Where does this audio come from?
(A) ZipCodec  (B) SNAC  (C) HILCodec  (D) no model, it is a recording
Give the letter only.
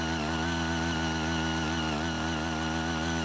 D